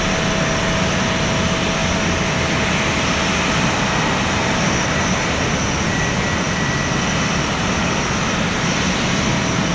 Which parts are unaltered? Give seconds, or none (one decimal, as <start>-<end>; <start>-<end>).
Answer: 0.0-9.7